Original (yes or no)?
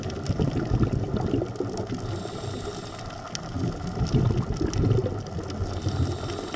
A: yes